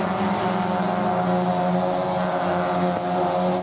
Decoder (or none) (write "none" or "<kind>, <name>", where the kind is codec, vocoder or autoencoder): none